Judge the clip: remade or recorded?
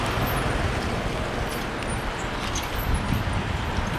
recorded